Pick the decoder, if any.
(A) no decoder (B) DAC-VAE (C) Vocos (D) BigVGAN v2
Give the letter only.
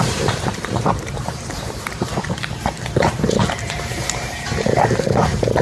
D